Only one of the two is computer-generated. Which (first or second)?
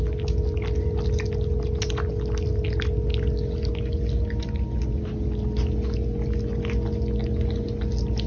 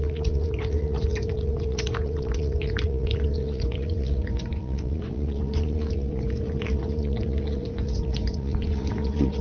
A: second